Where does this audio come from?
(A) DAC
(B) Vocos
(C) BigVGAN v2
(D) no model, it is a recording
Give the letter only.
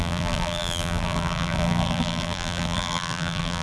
C